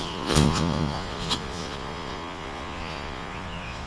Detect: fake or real fake